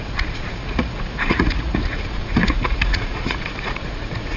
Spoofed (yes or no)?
yes